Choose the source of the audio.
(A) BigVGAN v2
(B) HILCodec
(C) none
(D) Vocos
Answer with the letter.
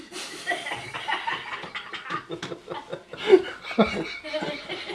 C